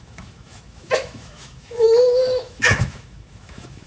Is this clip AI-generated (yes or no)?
yes